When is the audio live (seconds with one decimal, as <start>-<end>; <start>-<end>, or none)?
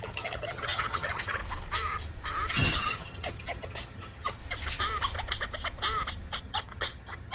1.4-2.5; 4.4-6.4